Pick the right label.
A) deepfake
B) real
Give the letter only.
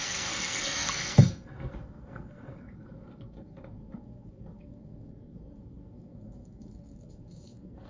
A